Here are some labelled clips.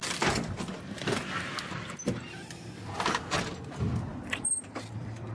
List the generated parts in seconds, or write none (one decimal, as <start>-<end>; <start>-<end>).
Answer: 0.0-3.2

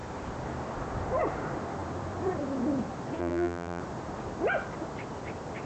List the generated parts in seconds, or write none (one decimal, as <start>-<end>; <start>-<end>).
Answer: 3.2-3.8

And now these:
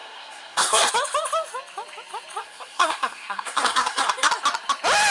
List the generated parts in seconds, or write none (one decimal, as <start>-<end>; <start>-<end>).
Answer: 0.0-0.9; 2.4-4.3

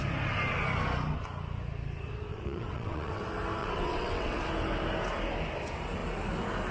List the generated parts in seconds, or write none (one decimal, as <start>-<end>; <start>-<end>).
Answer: 2.3-3.2; 3.6-4.4